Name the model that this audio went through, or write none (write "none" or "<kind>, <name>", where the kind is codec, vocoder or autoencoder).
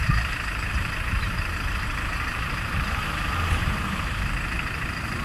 vocoder, BigVGAN v2